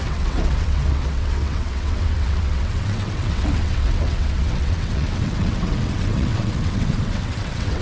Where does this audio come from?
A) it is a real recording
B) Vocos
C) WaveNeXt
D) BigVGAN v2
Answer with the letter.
C